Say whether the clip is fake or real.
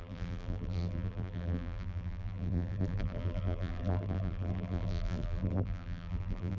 fake